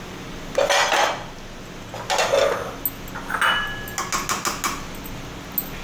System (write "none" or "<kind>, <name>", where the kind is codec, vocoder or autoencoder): none